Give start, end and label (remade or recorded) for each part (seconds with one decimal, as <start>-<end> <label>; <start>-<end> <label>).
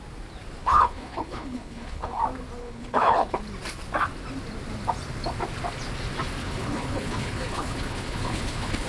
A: 0.0-0.6 recorded; 0.6-2.2 remade; 2.2-2.6 recorded; 2.6-3.4 remade; 3.4-6.4 recorded; 6.4-8.9 remade